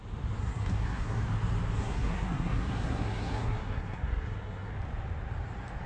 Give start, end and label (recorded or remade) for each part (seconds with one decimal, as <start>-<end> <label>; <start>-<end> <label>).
0.0-0.4 recorded; 0.4-1.2 remade; 1.2-1.8 recorded; 1.8-4.7 remade; 4.7-5.9 recorded